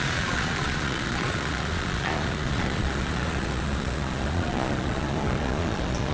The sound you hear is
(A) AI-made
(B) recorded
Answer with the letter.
A